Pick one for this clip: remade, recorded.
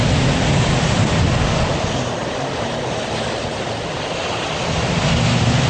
recorded